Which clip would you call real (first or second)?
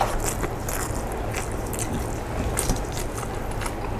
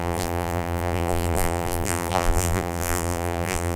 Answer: first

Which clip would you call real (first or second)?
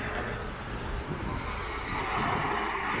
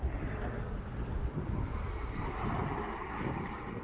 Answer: first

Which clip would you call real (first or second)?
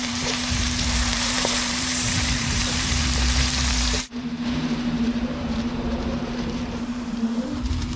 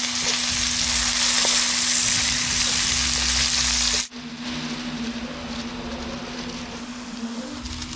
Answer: second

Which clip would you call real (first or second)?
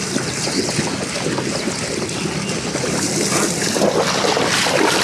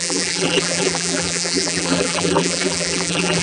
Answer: first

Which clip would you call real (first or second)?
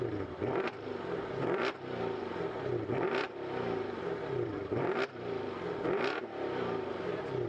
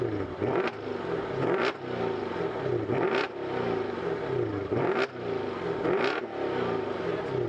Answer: second